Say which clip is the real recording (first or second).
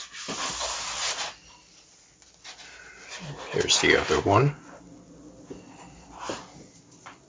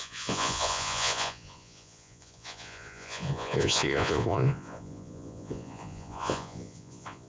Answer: first